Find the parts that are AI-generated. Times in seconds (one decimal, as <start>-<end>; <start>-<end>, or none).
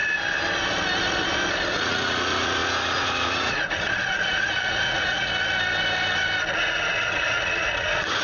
1.8-5.3; 6.5-8.2